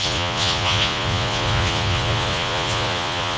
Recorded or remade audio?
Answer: remade